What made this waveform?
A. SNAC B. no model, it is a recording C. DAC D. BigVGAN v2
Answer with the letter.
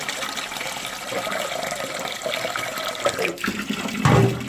B